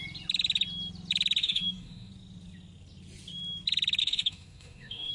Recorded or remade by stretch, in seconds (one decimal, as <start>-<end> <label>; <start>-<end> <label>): 0.0-1.4 recorded; 1.4-2.1 remade; 2.1-4.0 recorded; 4.0-5.1 remade